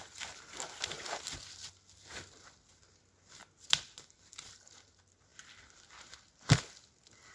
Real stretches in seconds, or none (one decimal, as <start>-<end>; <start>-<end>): 0.0-7.3